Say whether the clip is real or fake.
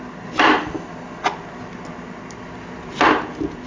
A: real